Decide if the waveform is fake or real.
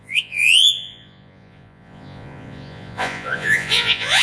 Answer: fake